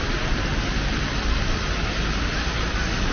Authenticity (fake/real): real